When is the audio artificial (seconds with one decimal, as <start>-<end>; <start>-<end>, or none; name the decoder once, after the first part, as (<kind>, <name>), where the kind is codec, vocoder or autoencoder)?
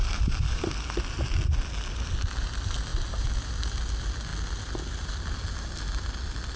0.0-0.7 (vocoder, BigVGAN v2)